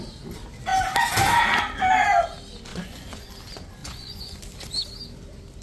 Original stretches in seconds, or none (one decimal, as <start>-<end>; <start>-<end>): 0.0-2.7; 3.3-3.8; 4.4-5.6